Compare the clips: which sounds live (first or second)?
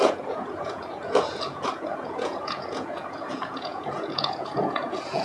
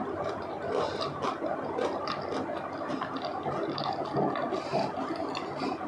second